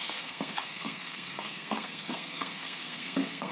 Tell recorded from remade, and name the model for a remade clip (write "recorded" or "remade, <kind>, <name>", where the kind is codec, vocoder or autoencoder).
remade, codec, SNAC